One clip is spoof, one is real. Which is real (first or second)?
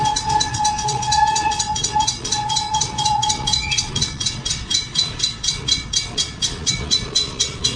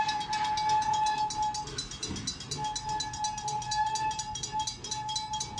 second